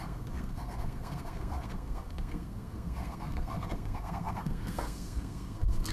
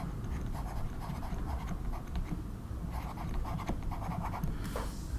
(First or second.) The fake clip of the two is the first